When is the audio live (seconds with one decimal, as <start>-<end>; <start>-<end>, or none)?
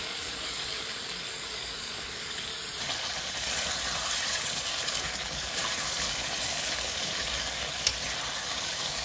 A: 2.5-4.3; 7.9-8.5